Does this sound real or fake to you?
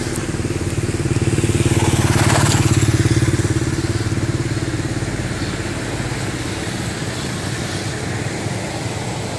real